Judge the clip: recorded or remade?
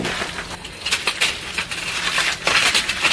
recorded